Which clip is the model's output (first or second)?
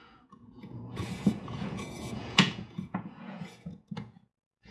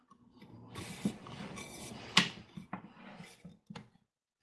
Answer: first